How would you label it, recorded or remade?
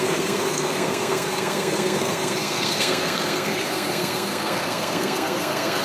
remade